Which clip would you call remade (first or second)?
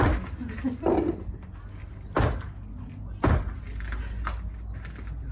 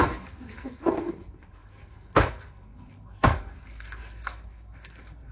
second